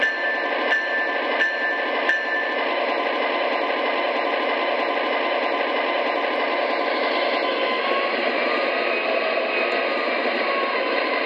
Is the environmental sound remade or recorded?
recorded